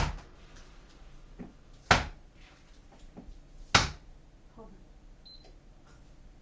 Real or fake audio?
real